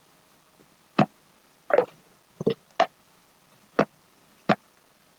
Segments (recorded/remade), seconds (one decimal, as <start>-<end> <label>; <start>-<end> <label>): 0.0-5.2 recorded